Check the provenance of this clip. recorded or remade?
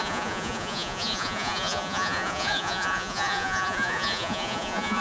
remade